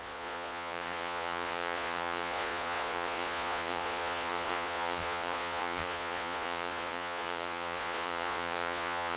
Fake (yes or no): yes